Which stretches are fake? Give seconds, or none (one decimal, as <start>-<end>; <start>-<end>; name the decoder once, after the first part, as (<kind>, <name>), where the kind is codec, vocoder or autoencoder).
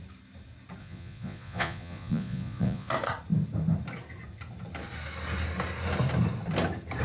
0.8-2.9 (vocoder, Vocos)